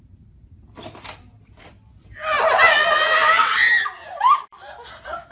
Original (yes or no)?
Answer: yes